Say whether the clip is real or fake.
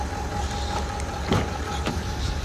real